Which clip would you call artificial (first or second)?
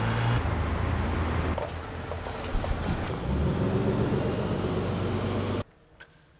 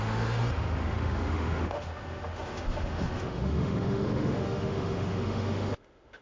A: second